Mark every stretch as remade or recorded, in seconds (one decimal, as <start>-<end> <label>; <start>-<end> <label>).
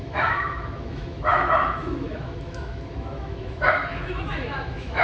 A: 0.0-5.0 remade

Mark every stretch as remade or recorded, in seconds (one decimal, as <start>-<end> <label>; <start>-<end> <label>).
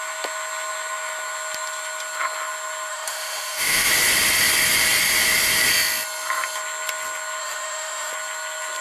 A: 0.0-2.9 recorded; 2.9-3.9 remade; 3.9-7.4 recorded; 7.4-8.1 remade; 8.1-8.8 recorded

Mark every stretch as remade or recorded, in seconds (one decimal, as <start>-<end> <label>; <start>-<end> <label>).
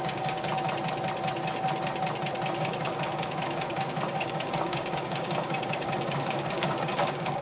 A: 0.0-0.5 remade; 0.5-2.6 recorded; 2.6-7.4 remade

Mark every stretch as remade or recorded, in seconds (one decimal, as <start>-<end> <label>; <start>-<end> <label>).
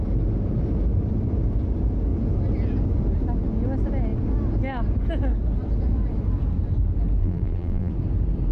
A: 0.0-7.2 recorded; 7.2-7.9 remade; 7.9-8.5 recorded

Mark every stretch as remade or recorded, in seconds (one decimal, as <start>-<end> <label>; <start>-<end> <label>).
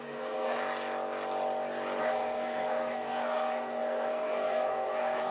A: 0.0-0.6 remade; 0.6-2.0 recorded; 2.0-5.3 remade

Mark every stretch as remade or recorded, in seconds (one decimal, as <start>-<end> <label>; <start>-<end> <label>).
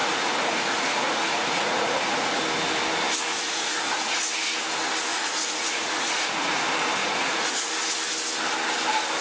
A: 0.0-2.4 remade; 2.4-3.3 recorded; 3.3-4.2 remade; 4.2-5.1 recorded; 5.1-6.6 remade; 6.6-7.0 recorded; 7.0-7.7 remade; 7.7-9.2 recorded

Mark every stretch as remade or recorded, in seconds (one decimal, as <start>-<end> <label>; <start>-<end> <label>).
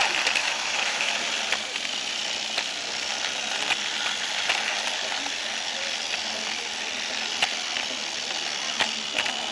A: 0.0-0.4 recorded; 0.4-1.1 remade; 1.1-9.5 recorded